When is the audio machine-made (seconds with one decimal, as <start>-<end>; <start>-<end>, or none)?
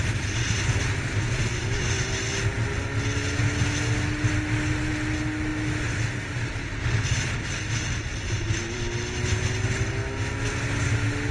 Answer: none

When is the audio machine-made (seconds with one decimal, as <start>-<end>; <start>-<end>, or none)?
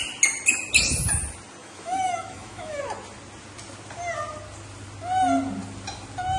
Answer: 1.6-2.8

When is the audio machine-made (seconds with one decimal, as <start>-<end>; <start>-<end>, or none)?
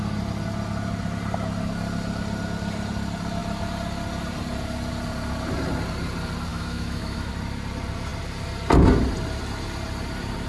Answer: 6.5-7.3